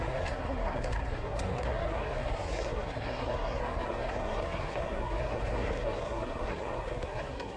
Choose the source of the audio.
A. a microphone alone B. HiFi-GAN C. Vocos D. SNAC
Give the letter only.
D